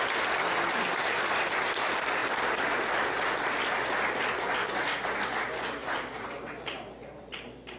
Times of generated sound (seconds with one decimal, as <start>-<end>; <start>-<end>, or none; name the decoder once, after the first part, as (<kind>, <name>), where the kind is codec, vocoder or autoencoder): 0.9-1.7 (vocoder, BigVGAN v2); 5.8-7.3